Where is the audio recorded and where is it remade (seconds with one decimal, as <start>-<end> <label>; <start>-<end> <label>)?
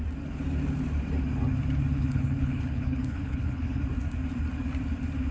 0.0-1.9 recorded; 1.9-3.8 remade; 3.8-5.3 recorded